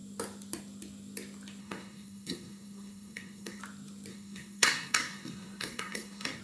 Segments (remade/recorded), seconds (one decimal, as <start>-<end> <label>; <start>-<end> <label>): 0.0-1.6 recorded; 1.6-3.6 remade; 3.6-4.1 recorded; 4.1-6.4 remade